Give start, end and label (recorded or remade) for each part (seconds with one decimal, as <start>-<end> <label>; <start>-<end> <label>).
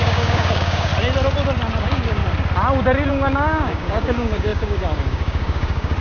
0.0-0.9 remade; 0.9-1.8 recorded; 1.8-2.2 remade; 2.2-3.1 recorded; 3.1-6.0 remade